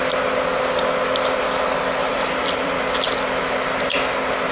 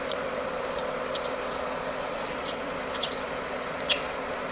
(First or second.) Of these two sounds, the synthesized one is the second